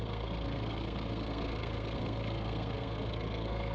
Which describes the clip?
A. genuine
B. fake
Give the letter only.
B